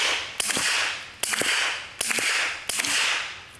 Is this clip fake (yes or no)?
no